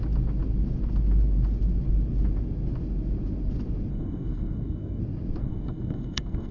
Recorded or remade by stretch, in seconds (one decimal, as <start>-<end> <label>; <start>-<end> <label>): 0.0-3.9 recorded; 3.9-5.0 remade; 5.0-5.4 recorded; 5.4-6.5 remade